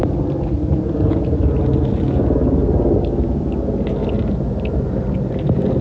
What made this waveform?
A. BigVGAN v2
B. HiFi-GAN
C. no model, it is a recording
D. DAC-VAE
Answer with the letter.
C